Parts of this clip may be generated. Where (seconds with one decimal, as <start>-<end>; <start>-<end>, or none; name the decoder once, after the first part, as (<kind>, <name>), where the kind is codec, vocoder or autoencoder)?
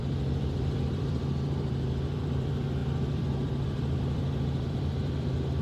0.0-5.6 (vocoder, BigVGAN v2)